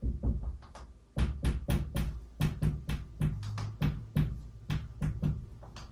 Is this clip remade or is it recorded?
recorded